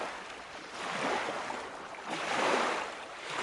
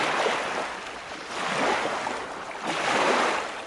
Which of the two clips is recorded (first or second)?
second